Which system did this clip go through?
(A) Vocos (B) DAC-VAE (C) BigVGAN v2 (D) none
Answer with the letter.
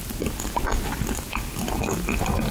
D